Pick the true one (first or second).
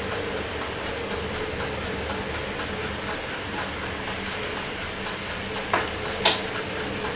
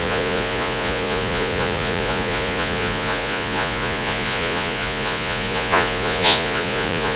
first